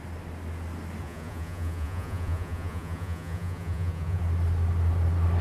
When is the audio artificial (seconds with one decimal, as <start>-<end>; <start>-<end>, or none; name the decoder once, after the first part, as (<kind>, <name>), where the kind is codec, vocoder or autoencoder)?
1.0-4.2 (vocoder, Vocos)